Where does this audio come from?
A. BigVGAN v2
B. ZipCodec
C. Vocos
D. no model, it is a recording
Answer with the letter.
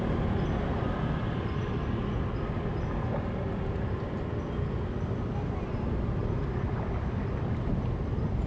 D